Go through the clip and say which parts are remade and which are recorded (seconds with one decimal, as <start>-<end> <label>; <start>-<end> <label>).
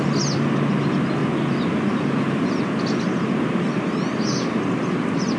0.0-5.4 recorded